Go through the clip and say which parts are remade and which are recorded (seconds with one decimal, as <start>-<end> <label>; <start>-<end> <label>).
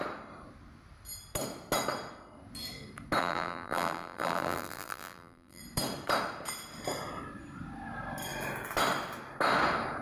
0.0-3.2 recorded; 3.2-5.6 remade; 5.6-10.0 recorded